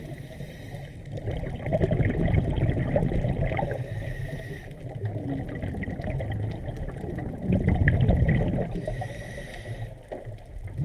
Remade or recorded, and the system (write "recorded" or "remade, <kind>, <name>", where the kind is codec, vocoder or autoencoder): recorded